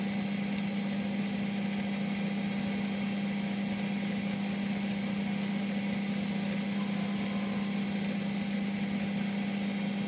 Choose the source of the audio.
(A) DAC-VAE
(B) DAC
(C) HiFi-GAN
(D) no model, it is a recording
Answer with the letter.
D